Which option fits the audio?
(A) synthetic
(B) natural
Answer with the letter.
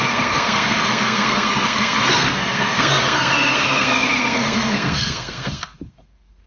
A